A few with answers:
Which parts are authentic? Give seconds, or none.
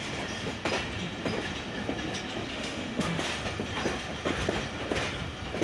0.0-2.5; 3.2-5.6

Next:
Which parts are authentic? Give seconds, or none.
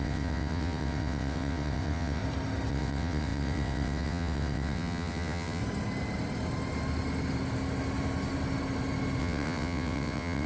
2.2-2.7; 5.6-9.2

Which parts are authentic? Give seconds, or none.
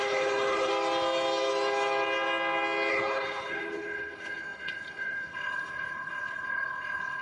0.7-2.9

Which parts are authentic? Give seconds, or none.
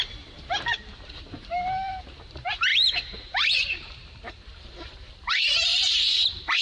none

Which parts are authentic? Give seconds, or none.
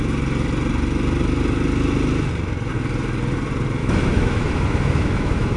0.0-3.8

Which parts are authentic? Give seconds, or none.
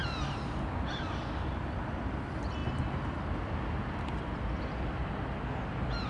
0.0-0.8; 2.6-4.5; 5.0-6.1